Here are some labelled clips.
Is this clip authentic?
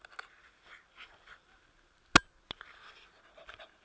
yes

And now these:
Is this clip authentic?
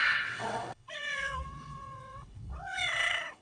no